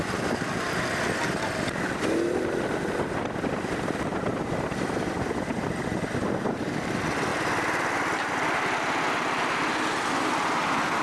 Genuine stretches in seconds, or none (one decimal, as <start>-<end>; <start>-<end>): 0.0-11.0